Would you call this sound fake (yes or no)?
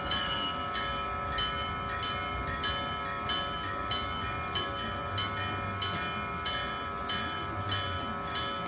no